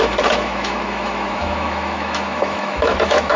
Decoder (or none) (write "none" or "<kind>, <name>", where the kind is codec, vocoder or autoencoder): autoencoder, DAC-VAE